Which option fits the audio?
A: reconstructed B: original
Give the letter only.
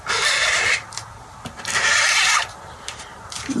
A